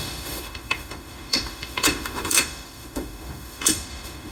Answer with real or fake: fake